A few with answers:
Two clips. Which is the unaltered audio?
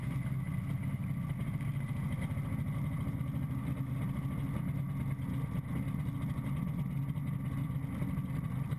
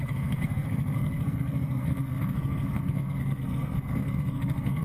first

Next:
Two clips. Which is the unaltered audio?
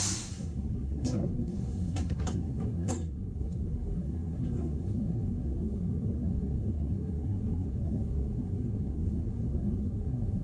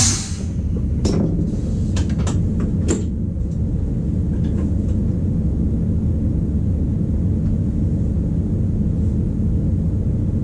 second